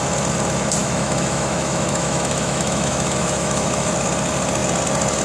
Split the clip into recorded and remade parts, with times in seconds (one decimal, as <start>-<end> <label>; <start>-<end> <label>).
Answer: 0.0-0.8 recorded; 0.8-3.9 remade; 3.9-5.2 recorded